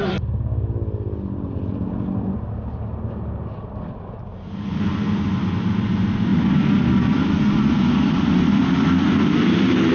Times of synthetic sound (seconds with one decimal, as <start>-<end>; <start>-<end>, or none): none